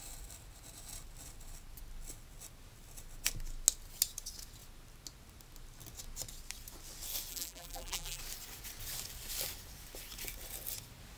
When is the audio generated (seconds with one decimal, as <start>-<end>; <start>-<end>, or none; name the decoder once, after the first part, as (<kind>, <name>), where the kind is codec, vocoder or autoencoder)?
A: 7.3-8.2 (vocoder, BigVGAN v2)